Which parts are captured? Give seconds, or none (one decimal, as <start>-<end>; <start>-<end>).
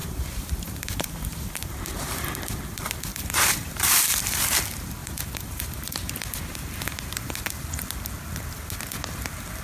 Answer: 1.7-3.1; 4.0-5.0; 7.4-9.6